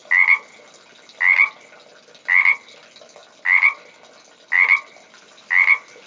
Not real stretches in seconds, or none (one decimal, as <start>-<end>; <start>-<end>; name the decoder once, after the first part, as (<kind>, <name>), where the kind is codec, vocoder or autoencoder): none